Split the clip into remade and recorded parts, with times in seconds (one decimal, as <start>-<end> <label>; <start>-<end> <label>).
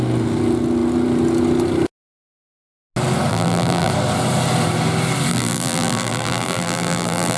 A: 0.0-3.3 recorded; 3.3-3.9 remade; 3.9-5.3 recorded; 5.3-7.4 remade